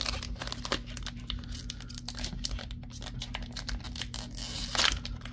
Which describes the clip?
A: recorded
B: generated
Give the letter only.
A